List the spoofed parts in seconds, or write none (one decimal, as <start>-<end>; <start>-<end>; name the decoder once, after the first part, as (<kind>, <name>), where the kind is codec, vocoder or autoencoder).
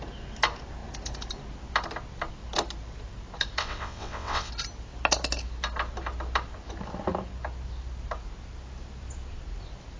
3.6-4.5 (vocoder, WaveNeXt)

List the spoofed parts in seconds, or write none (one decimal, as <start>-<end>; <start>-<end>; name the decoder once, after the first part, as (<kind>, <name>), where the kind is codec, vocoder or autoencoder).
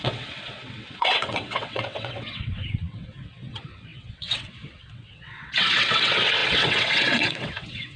0.0-8.0 (vocoder, WaveNeXt)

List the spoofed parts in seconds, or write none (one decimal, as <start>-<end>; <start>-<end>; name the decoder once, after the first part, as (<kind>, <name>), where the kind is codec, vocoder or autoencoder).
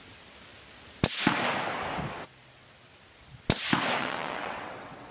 4.0-5.1 (vocoder, WaveNeXt)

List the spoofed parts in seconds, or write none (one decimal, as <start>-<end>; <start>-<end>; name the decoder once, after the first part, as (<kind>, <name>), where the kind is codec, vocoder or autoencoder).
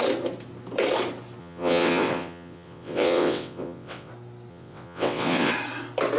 1.4-4.1 (vocoder, WaveNeXt); 4.5-5.5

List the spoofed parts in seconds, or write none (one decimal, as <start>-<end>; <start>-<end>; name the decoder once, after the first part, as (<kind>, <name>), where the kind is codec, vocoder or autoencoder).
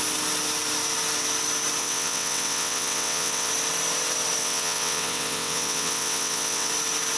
1.8-3.5 (vocoder, WaveNeXt); 4.4-6.7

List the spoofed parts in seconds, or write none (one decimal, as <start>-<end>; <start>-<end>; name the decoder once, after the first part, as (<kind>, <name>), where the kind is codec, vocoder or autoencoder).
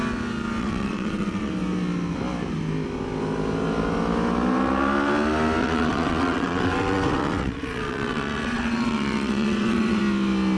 0.6-1.5 (vocoder, WaveNeXt); 5.6-10.0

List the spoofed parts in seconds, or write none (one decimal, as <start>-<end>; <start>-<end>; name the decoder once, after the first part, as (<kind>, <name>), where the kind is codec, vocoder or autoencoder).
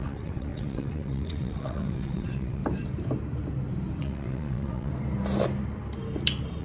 0.0-2.6 (vocoder, WaveNeXt); 4.0-4.9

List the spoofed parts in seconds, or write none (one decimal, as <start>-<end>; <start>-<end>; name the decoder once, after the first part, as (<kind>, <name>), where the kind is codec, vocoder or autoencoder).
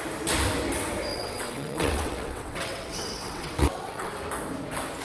1.1-4.1 (vocoder, WaveNeXt)